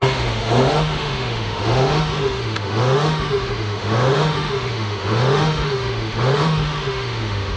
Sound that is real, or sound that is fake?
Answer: fake